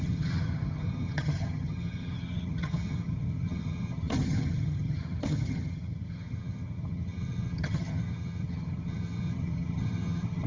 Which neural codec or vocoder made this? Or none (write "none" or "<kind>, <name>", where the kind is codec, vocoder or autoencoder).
vocoder, HiFi-GAN